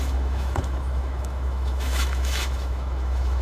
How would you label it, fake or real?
fake